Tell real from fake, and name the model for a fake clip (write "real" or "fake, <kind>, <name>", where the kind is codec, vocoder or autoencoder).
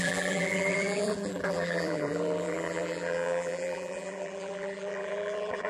fake, vocoder, BigVGAN v2